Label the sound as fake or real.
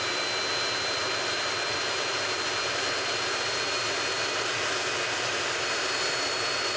real